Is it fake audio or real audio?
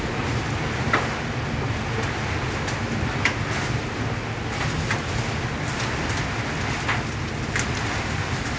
real